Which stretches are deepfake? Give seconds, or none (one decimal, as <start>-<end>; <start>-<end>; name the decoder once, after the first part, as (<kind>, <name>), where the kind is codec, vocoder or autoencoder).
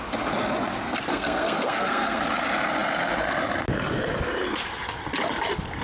1.1-2.2 (codec, SNAC)